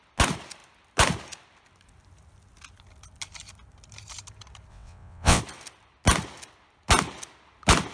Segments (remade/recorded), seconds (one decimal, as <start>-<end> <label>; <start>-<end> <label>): 0.0-4.7 recorded; 4.7-5.4 remade; 5.4-7.9 recorded